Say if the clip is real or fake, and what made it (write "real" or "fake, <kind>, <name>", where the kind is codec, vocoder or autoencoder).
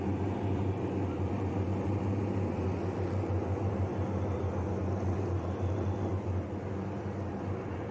real